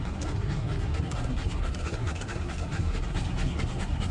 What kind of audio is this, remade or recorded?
remade